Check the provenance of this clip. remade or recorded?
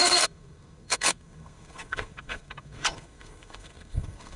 remade